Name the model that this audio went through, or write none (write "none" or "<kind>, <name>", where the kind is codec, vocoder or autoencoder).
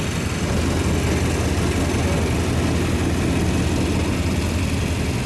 none